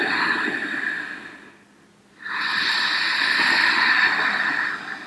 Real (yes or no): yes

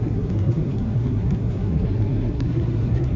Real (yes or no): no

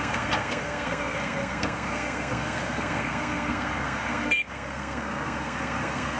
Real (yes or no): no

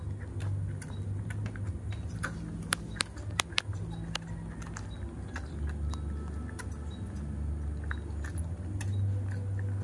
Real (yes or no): yes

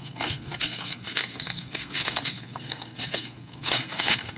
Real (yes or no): no